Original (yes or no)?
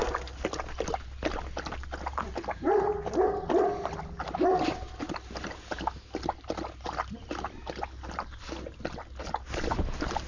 yes